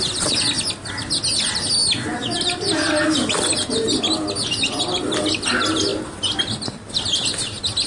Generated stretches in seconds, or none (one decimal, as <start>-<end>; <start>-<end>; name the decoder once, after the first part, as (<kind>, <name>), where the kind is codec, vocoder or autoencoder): none